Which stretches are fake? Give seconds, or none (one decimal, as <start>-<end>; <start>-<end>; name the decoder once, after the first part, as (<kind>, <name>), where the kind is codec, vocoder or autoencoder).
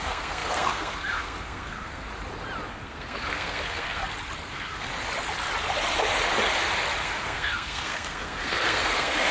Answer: 0.0-2.1 (codec, SNAC); 2.7-4.0; 4.5-4.9; 7.0-9.3